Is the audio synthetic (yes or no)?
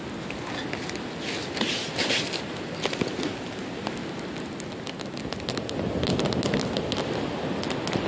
no